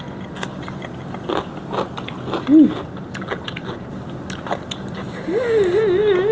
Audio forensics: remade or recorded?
recorded